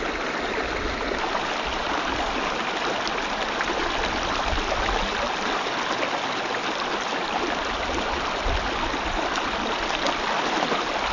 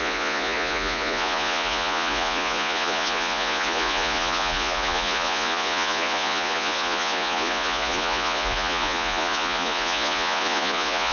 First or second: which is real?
first